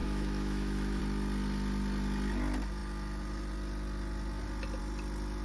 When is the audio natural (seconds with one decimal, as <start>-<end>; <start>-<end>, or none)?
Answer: 1.0-5.4